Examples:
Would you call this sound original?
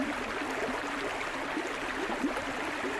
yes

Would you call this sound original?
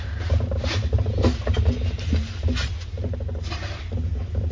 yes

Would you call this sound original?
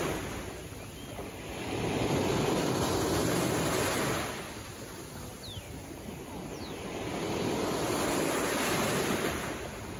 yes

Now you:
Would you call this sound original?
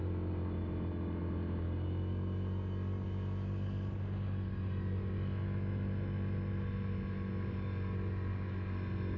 yes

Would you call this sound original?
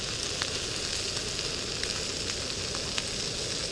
yes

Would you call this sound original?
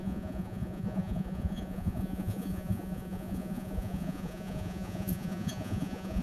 no